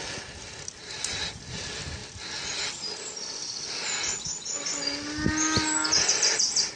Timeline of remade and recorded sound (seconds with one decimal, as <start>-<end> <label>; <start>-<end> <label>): 0.0-6.8 recorded